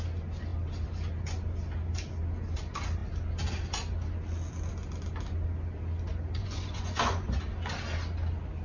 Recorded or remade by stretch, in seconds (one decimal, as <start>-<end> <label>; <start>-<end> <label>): 0.0-6.4 recorded; 6.4-7.3 remade; 7.3-8.6 recorded